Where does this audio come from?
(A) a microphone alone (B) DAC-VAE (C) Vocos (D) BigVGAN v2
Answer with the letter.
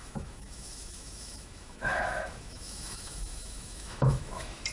B